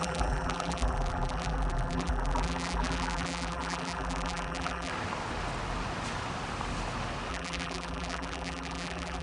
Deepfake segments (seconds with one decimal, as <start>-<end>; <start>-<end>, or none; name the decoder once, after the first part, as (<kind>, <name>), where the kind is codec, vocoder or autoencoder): 0.0-4.9 (vocoder, BigVGAN v2); 7.3-9.2